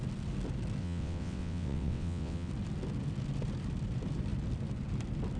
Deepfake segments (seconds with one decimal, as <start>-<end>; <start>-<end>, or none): 0.8-2.5